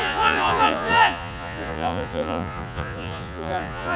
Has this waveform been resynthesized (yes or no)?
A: yes